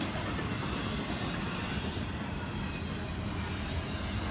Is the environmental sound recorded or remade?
recorded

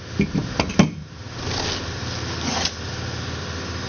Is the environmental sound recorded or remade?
recorded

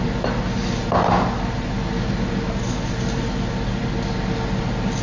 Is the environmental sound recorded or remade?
recorded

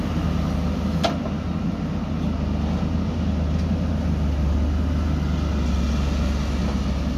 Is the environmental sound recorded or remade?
recorded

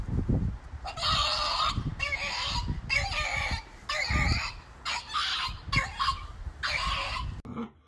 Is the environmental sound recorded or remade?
recorded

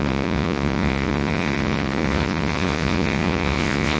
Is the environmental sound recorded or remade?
remade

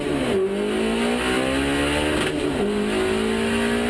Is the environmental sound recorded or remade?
recorded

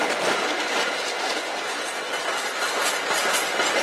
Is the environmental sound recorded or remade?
recorded